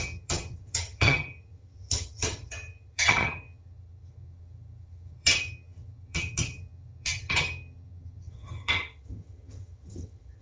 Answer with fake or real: fake